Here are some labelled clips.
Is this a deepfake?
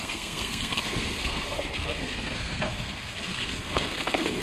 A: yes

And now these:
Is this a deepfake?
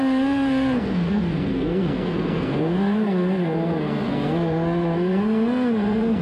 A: yes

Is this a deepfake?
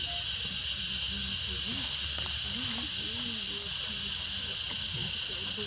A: no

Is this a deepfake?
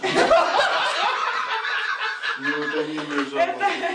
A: no